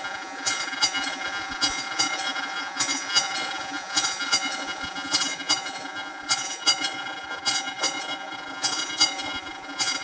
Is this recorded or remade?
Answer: remade